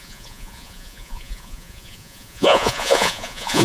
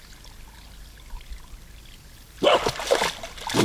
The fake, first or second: first